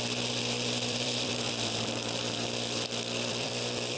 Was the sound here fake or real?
fake